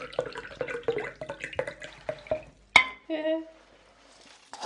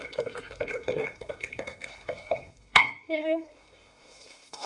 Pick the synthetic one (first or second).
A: second